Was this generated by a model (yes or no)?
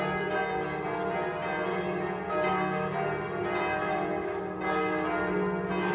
no